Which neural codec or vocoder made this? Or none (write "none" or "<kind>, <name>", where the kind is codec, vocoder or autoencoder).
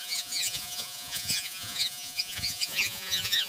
vocoder, Vocos